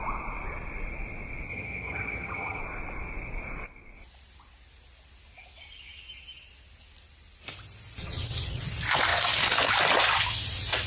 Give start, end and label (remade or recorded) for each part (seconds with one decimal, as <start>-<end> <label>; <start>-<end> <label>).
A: 0.0-1.5 recorded; 1.5-2.6 remade; 2.6-8.0 recorded; 8.0-8.6 remade; 8.6-10.9 recorded